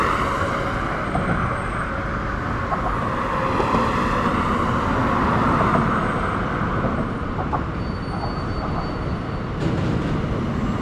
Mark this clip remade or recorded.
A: recorded